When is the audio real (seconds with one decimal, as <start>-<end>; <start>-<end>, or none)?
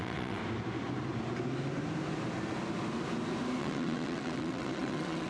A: 0.4-3.6